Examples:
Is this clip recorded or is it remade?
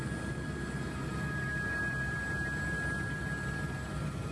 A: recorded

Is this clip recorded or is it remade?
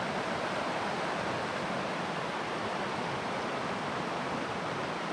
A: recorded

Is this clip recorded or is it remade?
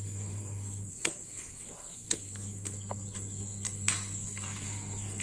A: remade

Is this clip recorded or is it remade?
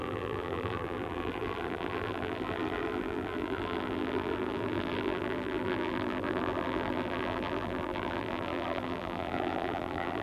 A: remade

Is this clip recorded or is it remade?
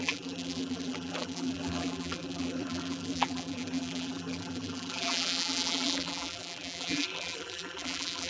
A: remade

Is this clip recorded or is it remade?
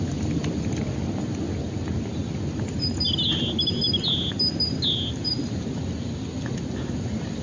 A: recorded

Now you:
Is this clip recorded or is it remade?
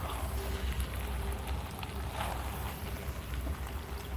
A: recorded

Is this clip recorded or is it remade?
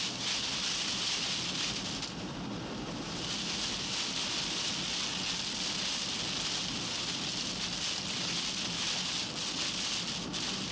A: recorded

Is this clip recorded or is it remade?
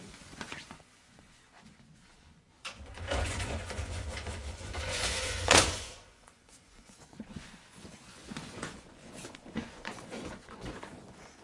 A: remade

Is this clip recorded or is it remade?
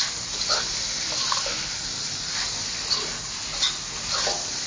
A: recorded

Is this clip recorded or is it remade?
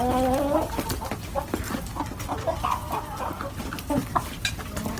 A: recorded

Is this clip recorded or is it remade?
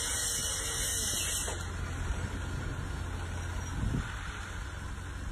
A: recorded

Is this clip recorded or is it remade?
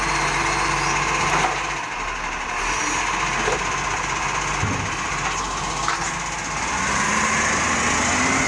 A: recorded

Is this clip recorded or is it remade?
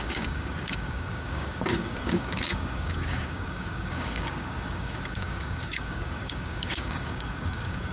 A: remade